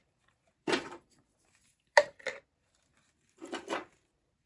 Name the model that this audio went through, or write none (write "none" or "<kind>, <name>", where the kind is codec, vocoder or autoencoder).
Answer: vocoder, BigVGAN v2